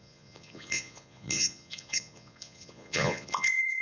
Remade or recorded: remade